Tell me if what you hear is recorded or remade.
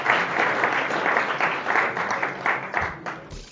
recorded